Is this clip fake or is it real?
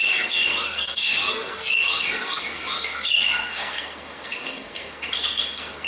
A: fake